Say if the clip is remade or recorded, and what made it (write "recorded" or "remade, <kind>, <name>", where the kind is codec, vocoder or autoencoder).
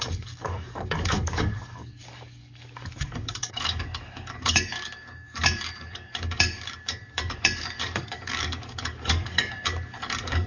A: remade, codec, DAC